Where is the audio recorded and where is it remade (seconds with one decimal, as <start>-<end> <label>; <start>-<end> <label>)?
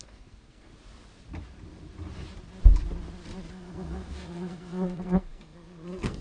0.0-0.7 remade; 0.7-3.5 recorded; 3.5-6.2 remade